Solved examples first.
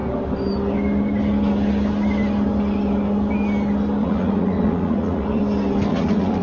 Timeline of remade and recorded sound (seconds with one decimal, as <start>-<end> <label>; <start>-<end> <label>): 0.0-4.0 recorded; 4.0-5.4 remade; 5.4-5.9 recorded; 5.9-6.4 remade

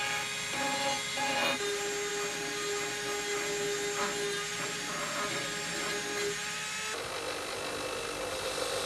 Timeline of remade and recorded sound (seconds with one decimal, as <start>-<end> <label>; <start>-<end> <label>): 0.0-8.9 recorded

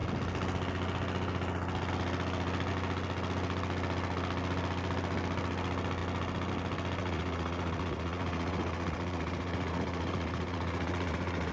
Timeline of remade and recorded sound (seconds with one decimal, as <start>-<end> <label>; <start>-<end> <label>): 0.0-7.0 recorded; 7.0-11.5 remade

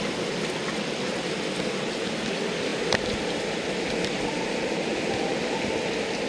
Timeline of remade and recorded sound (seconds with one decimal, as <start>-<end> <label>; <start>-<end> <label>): 0.0-6.3 recorded

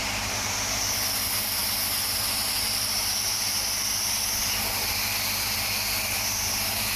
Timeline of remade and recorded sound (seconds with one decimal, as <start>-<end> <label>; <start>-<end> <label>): 0.0-7.0 recorded

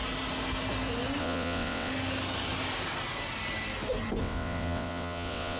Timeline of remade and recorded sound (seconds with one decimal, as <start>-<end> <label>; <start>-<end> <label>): 0.0-1.2 recorded; 1.2-1.9 remade; 1.9-4.2 recorded; 4.2-5.6 remade

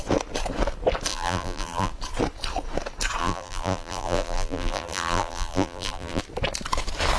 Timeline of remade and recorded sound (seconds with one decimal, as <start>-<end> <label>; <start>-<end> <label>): 0.0-1.1 recorded; 1.1-1.9 remade; 1.9-3.2 recorded; 3.2-6.2 remade; 6.2-7.2 recorded